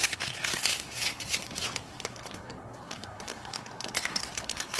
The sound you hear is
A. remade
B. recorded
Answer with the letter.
A